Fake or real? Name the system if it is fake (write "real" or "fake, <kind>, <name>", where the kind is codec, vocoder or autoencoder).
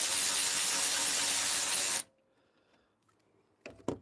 real